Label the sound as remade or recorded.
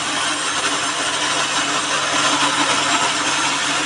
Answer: recorded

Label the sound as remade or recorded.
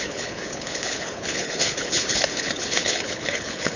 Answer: remade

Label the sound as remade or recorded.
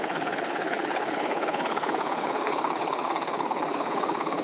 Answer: remade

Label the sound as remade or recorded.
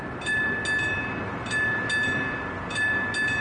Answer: recorded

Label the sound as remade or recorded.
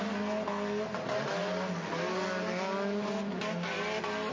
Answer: recorded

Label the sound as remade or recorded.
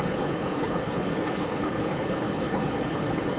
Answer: remade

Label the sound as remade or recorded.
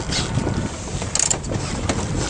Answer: recorded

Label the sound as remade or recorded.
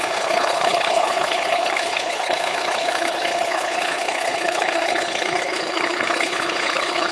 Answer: remade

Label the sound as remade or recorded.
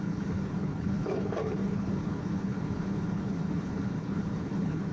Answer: remade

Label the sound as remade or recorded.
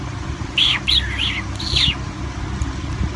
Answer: recorded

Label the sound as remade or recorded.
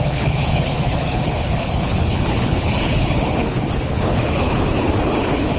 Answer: remade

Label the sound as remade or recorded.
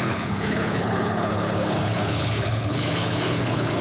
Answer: remade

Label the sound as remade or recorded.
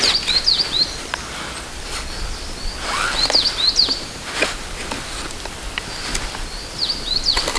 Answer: recorded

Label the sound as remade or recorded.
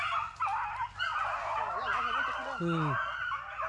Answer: recorded